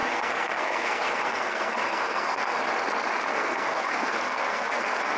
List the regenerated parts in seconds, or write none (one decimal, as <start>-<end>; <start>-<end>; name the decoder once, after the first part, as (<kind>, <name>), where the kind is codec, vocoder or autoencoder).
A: 0.0-2.6 (codec, SNAC); 3.3-5.2